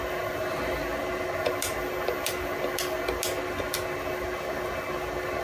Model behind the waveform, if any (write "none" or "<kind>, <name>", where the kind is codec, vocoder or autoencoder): none